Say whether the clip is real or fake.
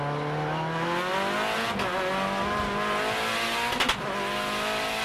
real